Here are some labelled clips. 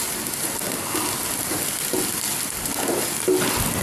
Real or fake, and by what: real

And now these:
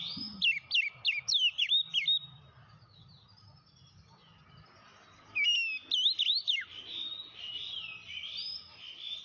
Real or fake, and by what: real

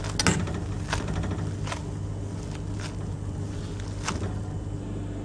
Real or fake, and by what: real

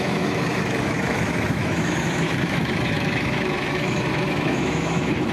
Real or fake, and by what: fake, autoencoder, DAC-VAE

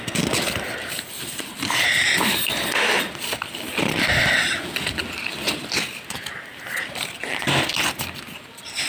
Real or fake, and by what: real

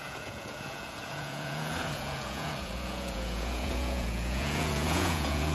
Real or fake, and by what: fake, vocoder, Vocos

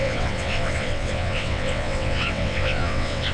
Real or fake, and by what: fake, vocoder, WaveNeXt